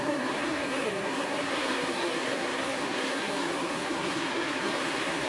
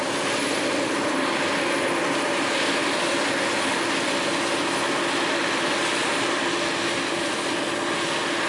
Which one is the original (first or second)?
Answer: second